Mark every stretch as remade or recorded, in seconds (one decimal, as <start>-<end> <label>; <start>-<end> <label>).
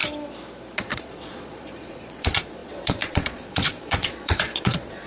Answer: 0.0-0.8 recorded; 0.8-5.1 remade